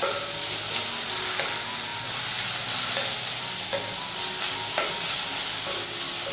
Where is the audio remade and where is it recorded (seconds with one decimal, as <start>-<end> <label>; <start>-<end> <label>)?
0.0-6.3 recorded